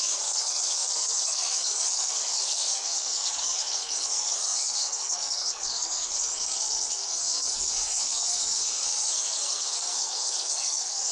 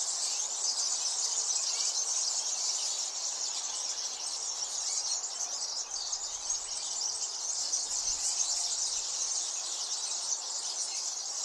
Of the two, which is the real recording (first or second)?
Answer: second